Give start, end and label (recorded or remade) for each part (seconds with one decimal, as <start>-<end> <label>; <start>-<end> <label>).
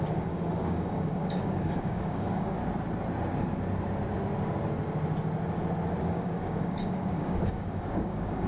0.0-2.6 remade; 2.6-6.0 recorded; 6.0-8.5 remade